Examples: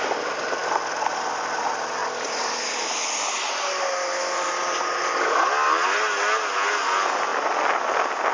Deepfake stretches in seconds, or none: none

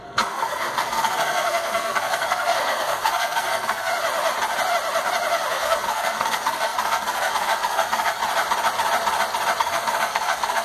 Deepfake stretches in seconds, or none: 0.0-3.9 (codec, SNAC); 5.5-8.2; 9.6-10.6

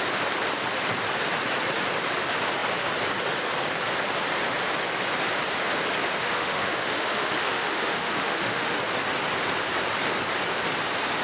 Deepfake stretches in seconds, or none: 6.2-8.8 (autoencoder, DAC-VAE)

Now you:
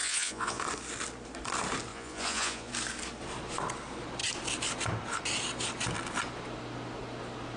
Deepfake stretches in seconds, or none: 0.0-0.6 (vocoder, Vocos); 1.9-2.7